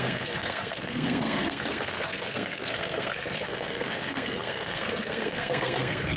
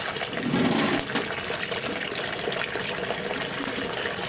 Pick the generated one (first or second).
first